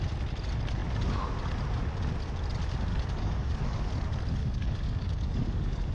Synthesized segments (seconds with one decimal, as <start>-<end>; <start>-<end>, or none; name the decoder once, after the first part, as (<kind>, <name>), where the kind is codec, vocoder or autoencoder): 2.9-3.9 (codec, DAC); 4.4-5.9